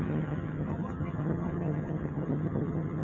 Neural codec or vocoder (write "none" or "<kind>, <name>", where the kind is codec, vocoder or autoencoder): vocoder, HiFi-GAN